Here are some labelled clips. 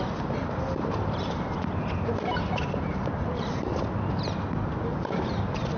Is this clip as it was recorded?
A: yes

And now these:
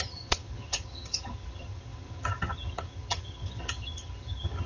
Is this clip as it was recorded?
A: no